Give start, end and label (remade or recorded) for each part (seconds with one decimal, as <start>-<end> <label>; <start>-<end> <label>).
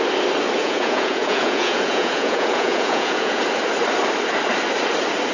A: 0.0-0.6 recorded; 0.6-3.4 remade; 3.4-5.3 recorded